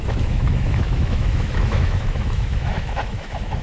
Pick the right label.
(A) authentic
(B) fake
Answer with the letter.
B